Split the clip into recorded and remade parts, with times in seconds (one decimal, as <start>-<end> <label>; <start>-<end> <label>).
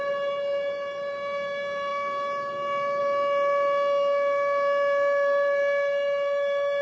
0.0-6.8 recorded